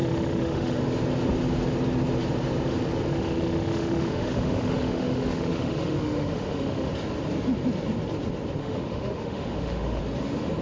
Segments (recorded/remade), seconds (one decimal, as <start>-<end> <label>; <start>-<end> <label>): 0.0-0.8 remade; 0.8-3.1 recorded; 3.1-6.9 remade; 6.9-8.6 recorded; 8.6-10.0 remade; 10.0-10.6 recorded